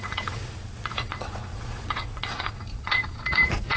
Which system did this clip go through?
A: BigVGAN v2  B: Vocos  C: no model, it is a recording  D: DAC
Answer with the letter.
B